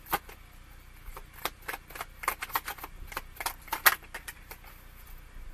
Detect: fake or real real